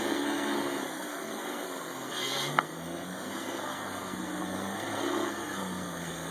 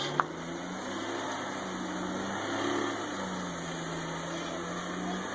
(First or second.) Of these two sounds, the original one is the second